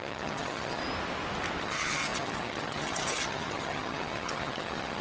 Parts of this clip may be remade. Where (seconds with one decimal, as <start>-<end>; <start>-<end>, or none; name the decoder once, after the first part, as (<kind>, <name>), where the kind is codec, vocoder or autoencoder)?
0.0-0.8 (vocoder, HiFi-GAN); 1.6-5.0